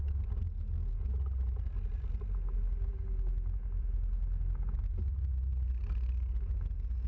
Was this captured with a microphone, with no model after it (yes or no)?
yes